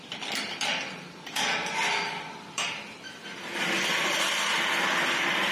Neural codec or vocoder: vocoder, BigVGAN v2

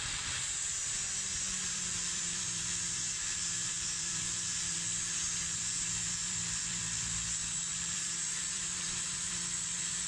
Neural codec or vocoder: vocoder, BigVGAN v2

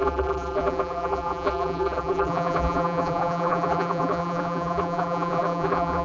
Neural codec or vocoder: vocoder, BigVGAN v2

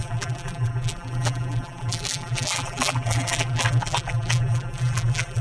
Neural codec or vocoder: vocoder, BigVGAN v2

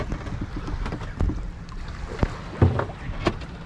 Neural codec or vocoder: none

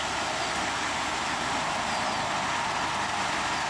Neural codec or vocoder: none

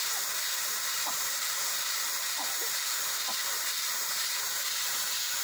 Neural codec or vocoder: vocoder, BigVGAN v2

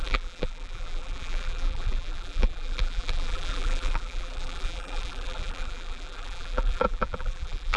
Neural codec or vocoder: vocoder, BigVGAN v2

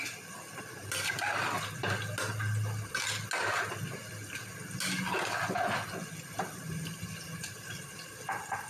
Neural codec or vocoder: none